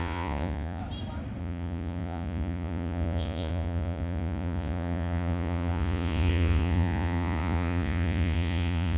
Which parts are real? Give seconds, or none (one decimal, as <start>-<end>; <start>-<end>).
0.8-1.4

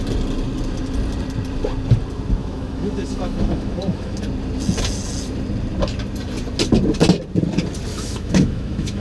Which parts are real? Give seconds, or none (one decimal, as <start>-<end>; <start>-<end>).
0.0-2.4; 4.2-7.9

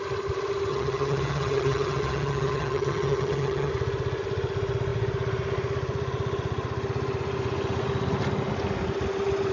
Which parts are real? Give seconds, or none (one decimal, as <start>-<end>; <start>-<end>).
0.0-0.7; 3.7-9.5

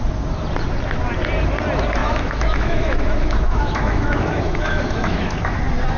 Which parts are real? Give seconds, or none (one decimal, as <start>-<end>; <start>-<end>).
0.0-2.0; 5.6-6.0